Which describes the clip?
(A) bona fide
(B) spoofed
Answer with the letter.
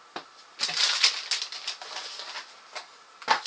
A